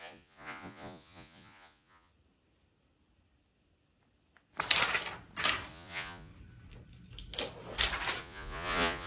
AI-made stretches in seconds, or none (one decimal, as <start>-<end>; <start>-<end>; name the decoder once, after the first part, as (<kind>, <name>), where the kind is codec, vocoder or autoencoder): 0.0-2.1 (vocoder, Vocos); 5.7-6.3; 8.2-9.1